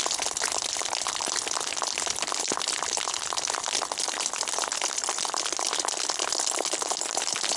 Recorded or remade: recorded